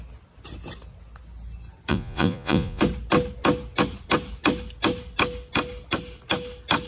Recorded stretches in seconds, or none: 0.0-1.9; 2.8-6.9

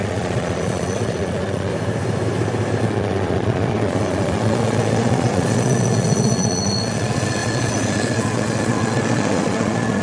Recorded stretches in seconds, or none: 1.7-2.8

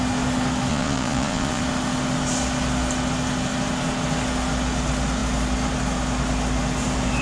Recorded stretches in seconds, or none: 0.0-0.7; 1.6-7.2

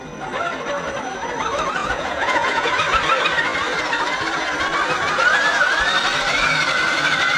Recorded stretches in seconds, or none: 0.0-1.8; 2.7-7.4

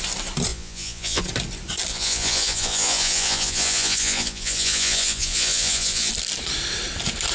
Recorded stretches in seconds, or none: 0.0-0.5; 1.2-1.9; 6.1-7.3

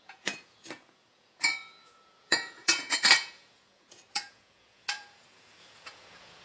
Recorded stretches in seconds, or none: none

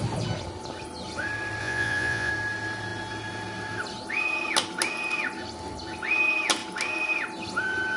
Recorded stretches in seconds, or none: 0.0-1.6; 2.3-8.0

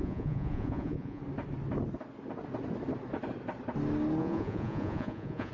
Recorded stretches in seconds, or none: 1.2-4.2